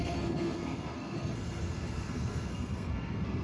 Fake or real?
fake